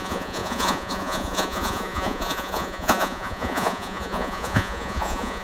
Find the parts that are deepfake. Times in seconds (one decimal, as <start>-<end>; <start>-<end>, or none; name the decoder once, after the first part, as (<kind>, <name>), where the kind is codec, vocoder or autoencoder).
0.0-5.4 (vocoder, Vocos)